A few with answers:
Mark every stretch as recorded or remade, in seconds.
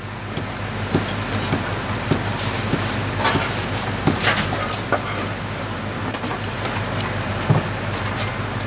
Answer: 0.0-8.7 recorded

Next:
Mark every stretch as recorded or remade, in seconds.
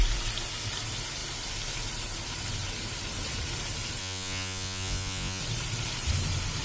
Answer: 0.0-4.0 recorded; 4.0-5.4 remade; 5.4-6.6 recorded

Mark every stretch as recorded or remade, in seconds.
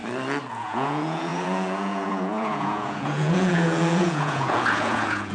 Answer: 0.0-0.5 recorded; 0.5-5.3 remade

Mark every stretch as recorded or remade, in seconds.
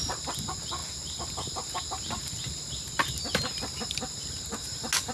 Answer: 0.0-5.1 recorded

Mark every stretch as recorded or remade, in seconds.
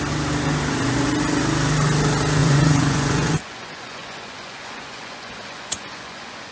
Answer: 0.0-2.4 recorded; 2.4-6.5 remade